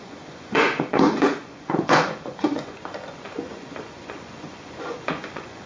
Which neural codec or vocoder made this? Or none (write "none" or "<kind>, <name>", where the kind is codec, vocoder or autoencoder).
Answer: vocoder, Vocos